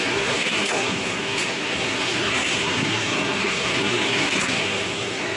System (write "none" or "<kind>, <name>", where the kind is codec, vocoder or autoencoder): codec, SNAC